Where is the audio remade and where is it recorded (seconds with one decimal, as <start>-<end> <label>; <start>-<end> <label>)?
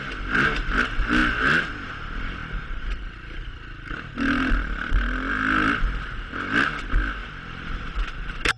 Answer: 0.0-2.4 recorded; 2.4-4.5 remade; 4.5-7.2 recorded; 7.2-8.6 remade